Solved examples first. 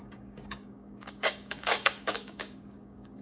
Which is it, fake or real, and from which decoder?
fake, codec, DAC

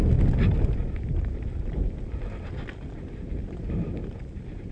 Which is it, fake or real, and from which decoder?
real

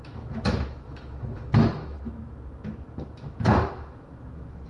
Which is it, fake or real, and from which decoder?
fake, autoencoder, DAC-VAE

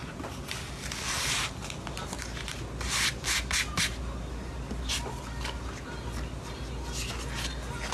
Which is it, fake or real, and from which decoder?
real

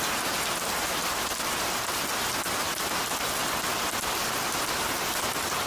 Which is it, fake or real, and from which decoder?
real